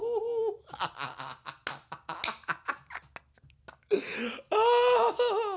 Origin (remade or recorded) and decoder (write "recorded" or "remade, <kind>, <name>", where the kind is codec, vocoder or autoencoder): recorded